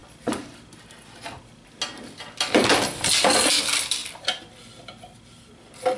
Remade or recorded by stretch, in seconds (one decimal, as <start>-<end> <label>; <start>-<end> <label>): 0.0-6.0 recorded